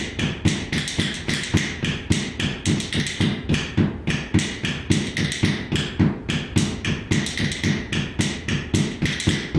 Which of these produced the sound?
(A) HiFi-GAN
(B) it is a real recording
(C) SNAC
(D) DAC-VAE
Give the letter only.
B